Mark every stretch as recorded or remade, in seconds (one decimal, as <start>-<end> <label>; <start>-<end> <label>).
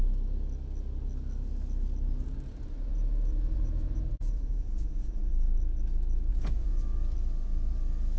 0.0-2.9 recorded; 2.9-5.3 remade; 5.3-6.3 recorded; 6.3-6.8 remade; 6.8-8.2 recorded